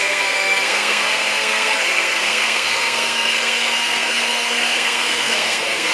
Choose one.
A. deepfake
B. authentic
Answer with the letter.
A